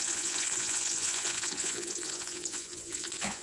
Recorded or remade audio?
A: remade